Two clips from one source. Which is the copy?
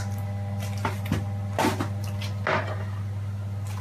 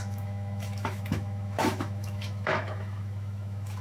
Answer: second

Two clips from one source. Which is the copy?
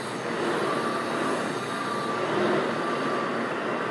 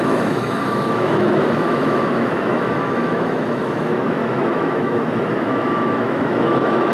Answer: second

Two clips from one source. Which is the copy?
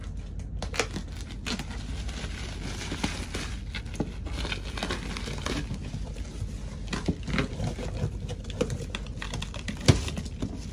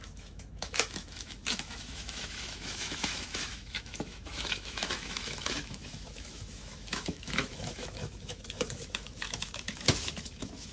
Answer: second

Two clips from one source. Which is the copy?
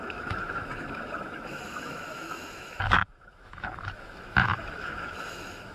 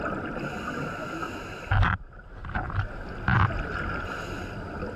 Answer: first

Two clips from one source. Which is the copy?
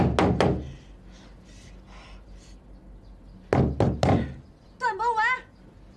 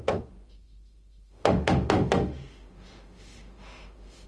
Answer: second